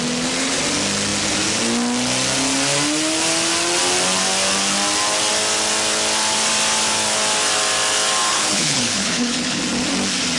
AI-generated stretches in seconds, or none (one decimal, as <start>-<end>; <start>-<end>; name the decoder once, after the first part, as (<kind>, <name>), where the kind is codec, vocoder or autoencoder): 8.3-9.6 (codec, HILCodec)